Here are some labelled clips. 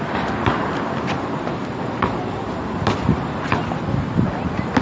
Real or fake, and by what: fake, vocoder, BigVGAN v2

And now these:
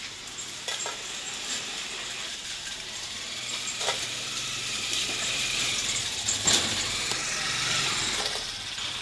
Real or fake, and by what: fake, vocoder, BigVGAN v2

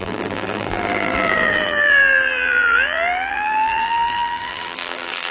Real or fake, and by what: fake, vocoder, BigVGAN v2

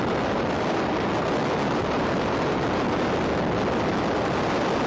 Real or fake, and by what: real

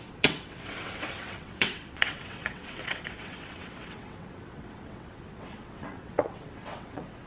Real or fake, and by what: fake, vocoder, WaveNeXt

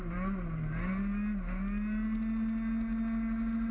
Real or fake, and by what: real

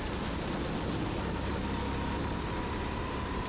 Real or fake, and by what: real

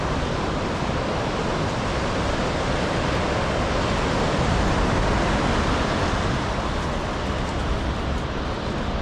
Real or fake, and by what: real